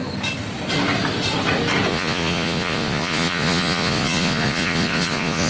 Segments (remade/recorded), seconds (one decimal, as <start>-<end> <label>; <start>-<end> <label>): 0.0-1.9 recorded; 1.9-5.5 remade